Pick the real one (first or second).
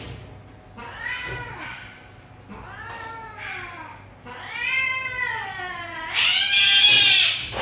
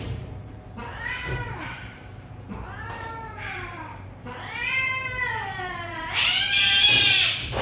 first